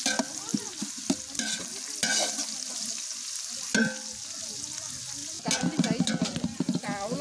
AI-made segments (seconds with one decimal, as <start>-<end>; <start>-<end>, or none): none